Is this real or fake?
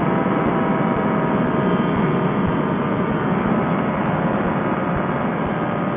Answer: real